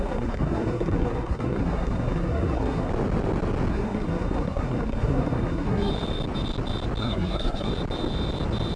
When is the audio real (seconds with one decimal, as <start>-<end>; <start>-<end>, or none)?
2.9-3.7; 5.9-7.0; 7.7-8.8